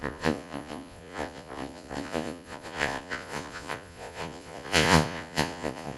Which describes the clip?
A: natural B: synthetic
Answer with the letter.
B